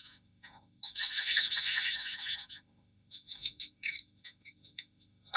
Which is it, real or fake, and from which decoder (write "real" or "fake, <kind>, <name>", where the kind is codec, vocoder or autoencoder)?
fake, autoencoder, DAC-VAE